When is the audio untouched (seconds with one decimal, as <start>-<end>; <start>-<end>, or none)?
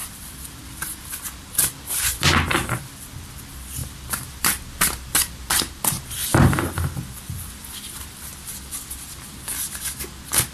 3.4-3.8; 7.5-10.5